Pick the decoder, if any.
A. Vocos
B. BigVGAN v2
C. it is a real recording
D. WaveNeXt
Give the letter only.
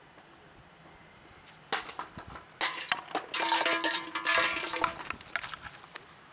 C